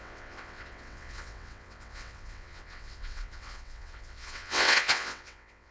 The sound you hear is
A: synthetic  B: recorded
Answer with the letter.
A